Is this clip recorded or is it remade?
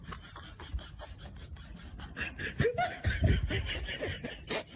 recorded